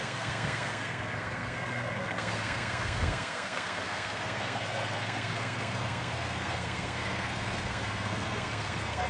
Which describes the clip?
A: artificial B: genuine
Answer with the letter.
A